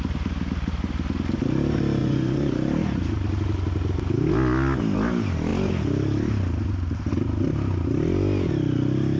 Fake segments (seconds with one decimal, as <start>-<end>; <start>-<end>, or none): 2.0-2.5